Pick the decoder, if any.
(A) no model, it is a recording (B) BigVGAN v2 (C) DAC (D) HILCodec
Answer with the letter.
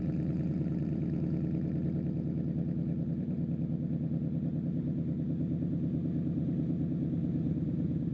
B